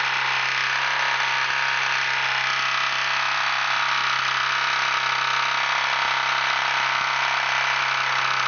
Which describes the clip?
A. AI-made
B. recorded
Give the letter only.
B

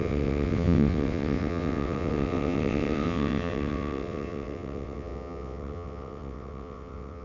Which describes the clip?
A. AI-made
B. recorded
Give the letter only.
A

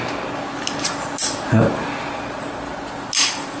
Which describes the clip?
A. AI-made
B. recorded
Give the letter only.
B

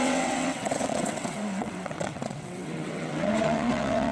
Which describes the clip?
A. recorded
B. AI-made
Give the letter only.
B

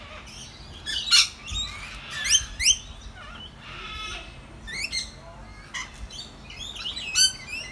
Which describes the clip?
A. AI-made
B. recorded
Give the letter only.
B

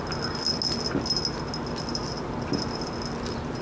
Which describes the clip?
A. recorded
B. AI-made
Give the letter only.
A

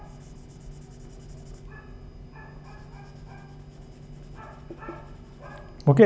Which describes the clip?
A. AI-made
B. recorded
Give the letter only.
B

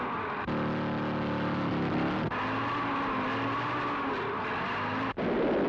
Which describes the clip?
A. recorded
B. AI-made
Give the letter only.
A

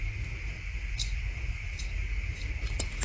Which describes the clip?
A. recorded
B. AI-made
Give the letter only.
A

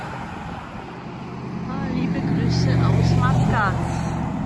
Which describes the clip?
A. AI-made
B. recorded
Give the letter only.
B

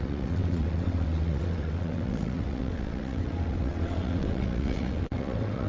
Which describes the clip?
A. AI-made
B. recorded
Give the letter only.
A